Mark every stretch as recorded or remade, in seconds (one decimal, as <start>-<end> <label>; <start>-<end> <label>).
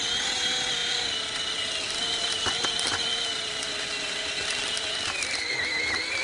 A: 0.0-6.2 recorded